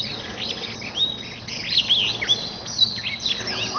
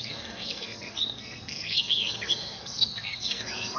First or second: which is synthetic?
second